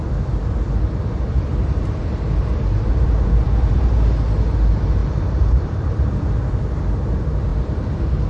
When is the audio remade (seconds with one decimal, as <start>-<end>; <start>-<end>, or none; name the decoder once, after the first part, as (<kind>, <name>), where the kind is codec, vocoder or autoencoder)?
1.5-3.9 (vocoder, BigVGAN v2); 5.0-6.0